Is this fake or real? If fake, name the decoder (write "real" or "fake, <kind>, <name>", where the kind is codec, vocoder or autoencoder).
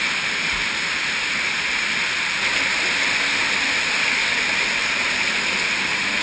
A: real